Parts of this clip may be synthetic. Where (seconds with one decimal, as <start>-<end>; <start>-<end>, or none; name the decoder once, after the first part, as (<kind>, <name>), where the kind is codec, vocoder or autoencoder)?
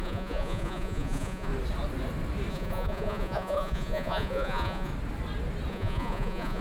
0.0-1.5 (vocoder, Vocos); 2.5-4.9; 5.7-6.6